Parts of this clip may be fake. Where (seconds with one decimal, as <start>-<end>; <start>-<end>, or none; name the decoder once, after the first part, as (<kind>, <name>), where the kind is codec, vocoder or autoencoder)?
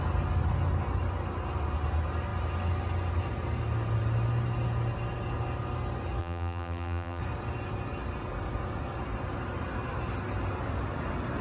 6.2-7.2 (vocoder, BigVGAN v2)